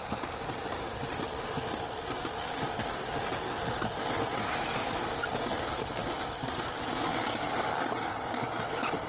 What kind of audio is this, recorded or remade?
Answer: recorded